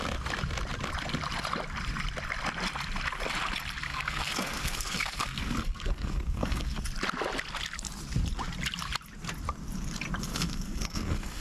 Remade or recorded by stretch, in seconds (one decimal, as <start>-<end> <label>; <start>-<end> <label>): 0.0-3.9 recorded; 3.9-6.8 remade; 6.8-10.3 recorded; 10.3-11.4 remade